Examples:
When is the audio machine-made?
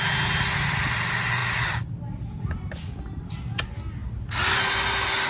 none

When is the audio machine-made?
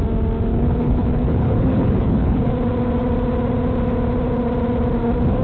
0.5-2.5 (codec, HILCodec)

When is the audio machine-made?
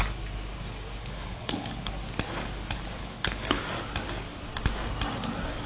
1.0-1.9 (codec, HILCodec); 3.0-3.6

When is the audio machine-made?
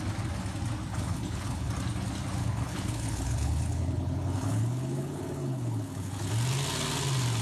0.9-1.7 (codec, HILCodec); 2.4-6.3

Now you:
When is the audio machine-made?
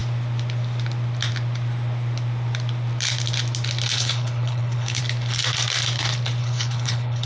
3.9-5.0 (codec, HILCodec); 6.4-7.3